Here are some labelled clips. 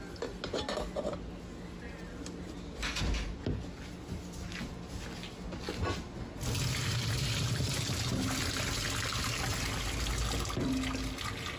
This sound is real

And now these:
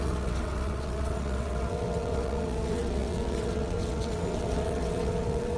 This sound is fake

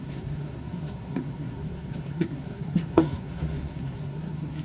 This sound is fake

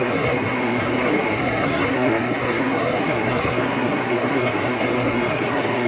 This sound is fake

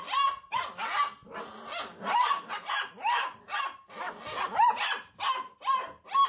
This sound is real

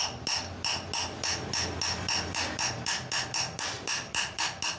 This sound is real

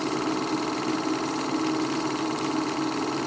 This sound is real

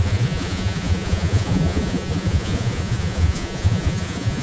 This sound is fake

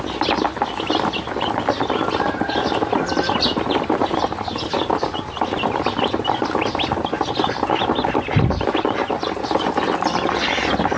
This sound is real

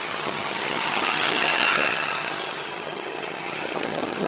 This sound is fake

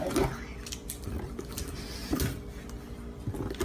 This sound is real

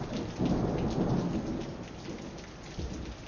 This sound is real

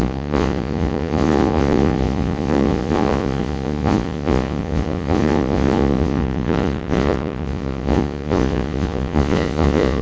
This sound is fake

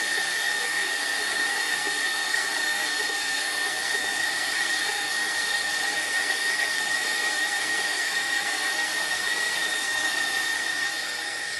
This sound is fake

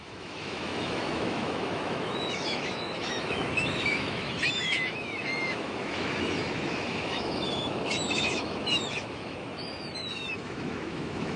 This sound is fake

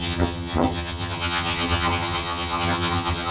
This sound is fake